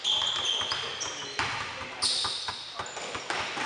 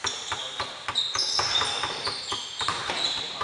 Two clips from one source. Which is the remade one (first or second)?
second